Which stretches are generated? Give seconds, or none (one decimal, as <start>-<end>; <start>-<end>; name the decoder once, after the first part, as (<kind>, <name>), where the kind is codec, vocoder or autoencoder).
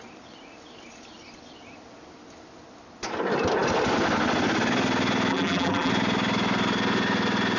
5.3-5.9 (vocoder, BigVGAN v2)